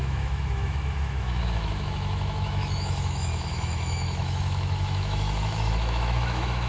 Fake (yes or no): yes